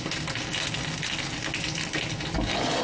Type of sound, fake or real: real